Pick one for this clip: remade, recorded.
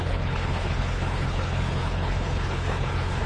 remade